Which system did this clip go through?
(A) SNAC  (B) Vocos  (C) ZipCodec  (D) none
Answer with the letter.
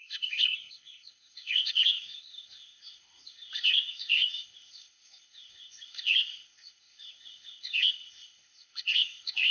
C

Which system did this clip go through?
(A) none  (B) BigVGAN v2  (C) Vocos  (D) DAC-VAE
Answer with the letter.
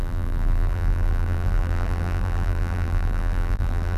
B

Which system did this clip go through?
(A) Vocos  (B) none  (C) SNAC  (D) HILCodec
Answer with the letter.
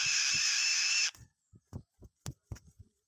B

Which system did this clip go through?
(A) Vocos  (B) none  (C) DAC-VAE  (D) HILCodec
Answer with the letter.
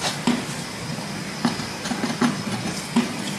B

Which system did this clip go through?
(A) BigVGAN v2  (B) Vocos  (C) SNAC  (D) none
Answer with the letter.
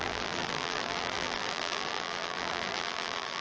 A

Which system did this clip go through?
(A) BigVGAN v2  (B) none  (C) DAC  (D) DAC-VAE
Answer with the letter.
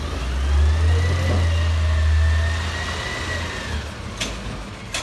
B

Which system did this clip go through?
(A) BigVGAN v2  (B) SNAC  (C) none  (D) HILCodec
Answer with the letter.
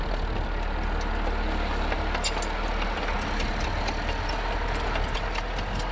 C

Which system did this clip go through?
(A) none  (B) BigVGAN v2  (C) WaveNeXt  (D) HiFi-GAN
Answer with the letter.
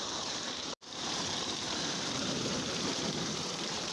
B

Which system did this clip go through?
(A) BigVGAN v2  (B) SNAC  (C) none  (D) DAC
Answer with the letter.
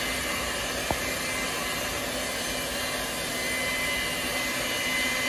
C